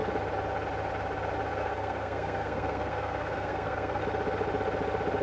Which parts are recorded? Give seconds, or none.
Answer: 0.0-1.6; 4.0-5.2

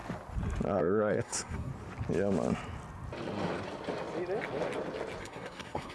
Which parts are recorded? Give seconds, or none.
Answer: 0.0-0.8; 1.7-5.2